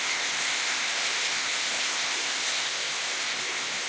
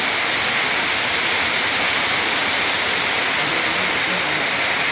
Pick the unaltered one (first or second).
second